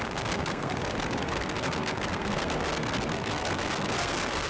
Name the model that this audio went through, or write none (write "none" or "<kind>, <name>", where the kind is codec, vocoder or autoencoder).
codec, SNAC